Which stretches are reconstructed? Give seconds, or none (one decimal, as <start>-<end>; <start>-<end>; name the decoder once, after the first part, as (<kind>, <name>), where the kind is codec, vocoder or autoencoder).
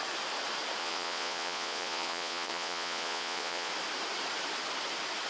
0.8-3.7 (vocoder, Vocos)